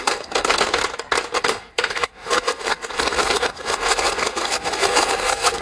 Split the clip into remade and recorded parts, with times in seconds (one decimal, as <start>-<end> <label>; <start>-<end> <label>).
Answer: 0.0-0.8 remade; 0.8-1.4 recorded; 1.4-5.6 remade